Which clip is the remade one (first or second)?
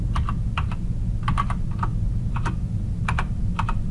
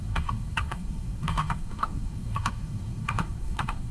second